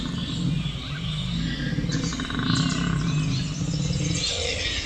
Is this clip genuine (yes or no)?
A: yes